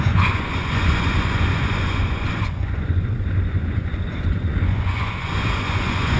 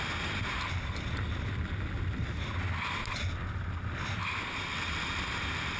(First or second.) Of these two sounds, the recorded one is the second